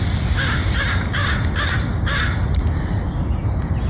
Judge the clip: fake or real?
real